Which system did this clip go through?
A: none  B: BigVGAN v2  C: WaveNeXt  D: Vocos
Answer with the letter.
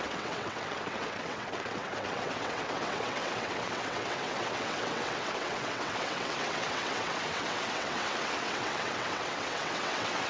C